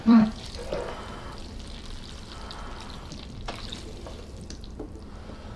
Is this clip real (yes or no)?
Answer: no